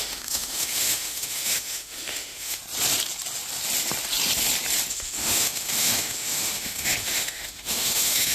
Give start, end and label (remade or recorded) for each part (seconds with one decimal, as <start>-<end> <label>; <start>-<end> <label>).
0.0-2.6 remade; 2.6-4.9 recorded; 4.9-8.3 remade